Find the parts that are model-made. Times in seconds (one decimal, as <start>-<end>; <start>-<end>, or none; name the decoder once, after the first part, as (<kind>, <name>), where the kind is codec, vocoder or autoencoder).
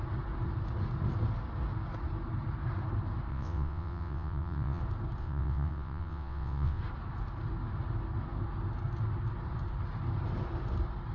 3.3-4.8 (vocoder, WaveNeXt); 5.2-6.8